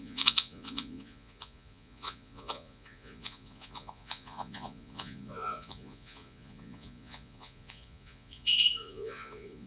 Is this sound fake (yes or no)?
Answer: yes